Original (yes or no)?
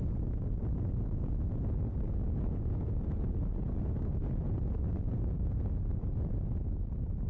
no